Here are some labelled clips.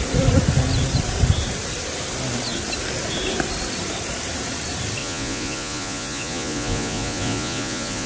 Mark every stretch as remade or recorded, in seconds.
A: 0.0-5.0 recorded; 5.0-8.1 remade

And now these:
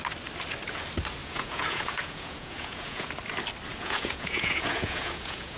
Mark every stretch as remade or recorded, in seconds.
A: 0.0-1.2 recorded; 1.2-3.1 remade; 3.1-3.7 recorded; 3.7-5.6 remade

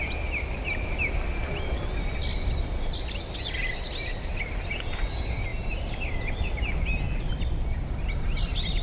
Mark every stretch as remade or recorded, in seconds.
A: 0.0-8.8 recorded

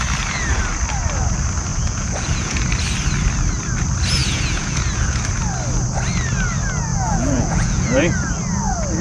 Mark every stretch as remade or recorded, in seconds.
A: 0.0-1.7 recorded; 1.7-2.6 remade; 2.6-4.2 recorded; 4.2-5.2 remade; 5.2-6.9 recorded; 6.9-8.3 remade; 8.3-9.0 recorded

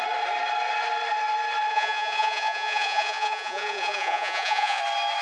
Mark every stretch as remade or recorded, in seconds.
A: 0.0-1.7 recorded; 1.7-4.8 remade; 4.8-5.2 recorded

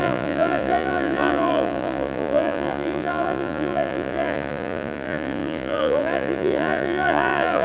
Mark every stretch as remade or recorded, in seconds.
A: 0.0-7.6 remade

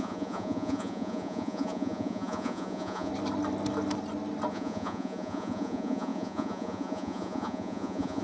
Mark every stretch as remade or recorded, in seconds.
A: 0.0-3.1 remade; 3.1-4.5 recorded; 4.5-8.2 remade

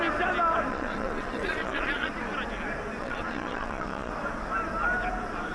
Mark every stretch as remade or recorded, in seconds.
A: 0.0-0.7 recorded; 0.7-2.1 remade; 2.1-3.0 recorded; 3.0-4.1 remade; 4.1-5.5 recorded